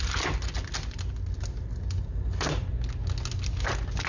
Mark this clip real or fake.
real